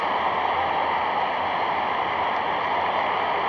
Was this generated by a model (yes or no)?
no